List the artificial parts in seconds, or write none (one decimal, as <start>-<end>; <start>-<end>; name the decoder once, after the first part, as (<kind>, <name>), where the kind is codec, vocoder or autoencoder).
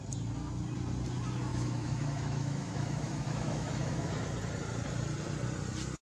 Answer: 1.5-4.1 (autoencoder, DAC-VAE)